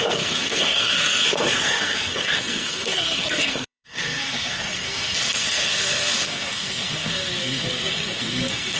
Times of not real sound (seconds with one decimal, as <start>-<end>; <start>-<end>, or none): 0.0-8.8